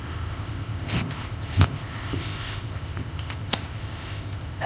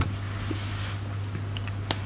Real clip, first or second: second